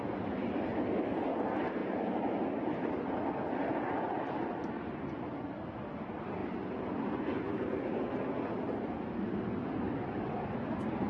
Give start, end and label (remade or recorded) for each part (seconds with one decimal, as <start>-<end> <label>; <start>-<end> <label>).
0.0-1.8 remade; 1.8-2.9 recorded; 2.9-6.4 remade; 6.4-11.1 recorded